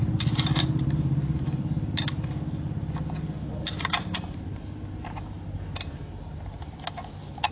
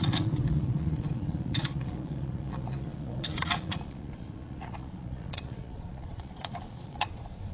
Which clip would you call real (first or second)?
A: first